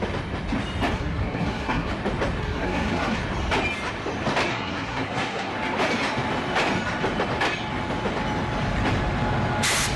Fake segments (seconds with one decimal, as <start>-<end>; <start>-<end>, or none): 0.9-1.9; 2.4-3.2; 4.5-5.5